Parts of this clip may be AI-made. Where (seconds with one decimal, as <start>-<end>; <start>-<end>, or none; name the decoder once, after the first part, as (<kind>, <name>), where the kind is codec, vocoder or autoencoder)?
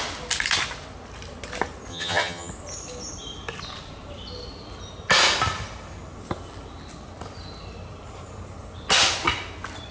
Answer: 1.9-2.5 (vocoder, HiFi-GAN)